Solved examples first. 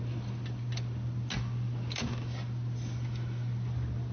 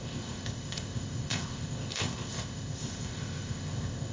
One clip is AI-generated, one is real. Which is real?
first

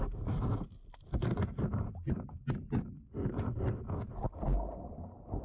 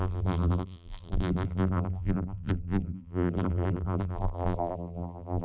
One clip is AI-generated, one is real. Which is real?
first